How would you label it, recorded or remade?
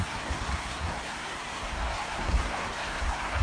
remade